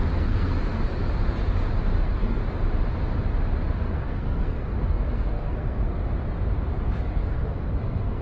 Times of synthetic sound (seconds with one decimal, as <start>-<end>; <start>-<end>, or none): 0.0-0.9; 2.0-2.4; 3.8-6.0; 7.0-8.2